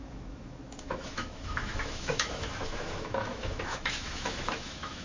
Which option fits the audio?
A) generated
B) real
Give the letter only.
A